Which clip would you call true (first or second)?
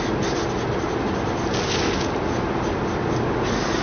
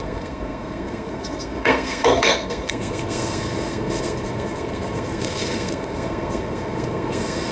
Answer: first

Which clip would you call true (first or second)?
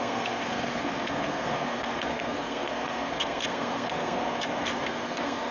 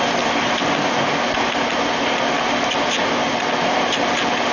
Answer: second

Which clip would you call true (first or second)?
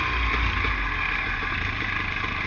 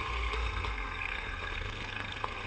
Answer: first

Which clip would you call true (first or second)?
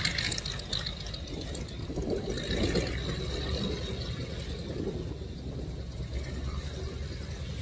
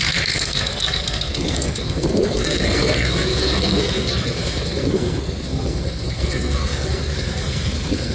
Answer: first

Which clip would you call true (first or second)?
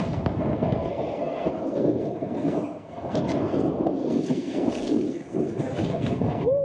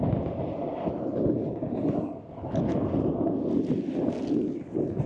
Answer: second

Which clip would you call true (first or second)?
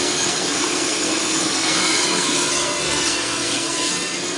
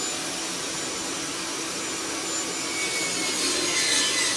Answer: second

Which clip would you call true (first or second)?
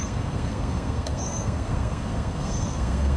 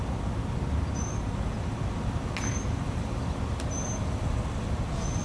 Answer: second